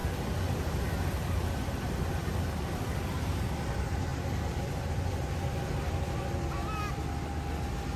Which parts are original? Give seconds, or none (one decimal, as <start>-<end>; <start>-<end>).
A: 0.0-2.2; 2.7-4.1; 4.9-8.0